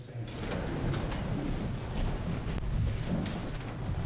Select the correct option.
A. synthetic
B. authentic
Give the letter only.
B